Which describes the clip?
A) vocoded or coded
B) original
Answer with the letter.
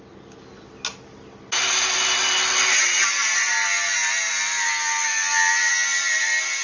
B